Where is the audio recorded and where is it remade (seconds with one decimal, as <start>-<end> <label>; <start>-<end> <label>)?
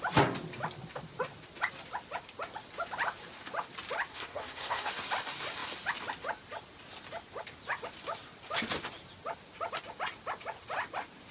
0.0-4.1 recorded; 4.1-4.9 remade; 4.9-11.3 recorded